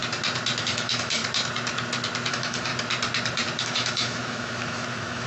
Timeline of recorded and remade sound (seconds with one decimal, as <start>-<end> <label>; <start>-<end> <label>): 0.0-0.6 recorded; 0.6-1.2 remade; 1.2-2.3 recorded; 2.3-2.7 remade; 2.7-3.6 recorded; 3.6-5.3 remade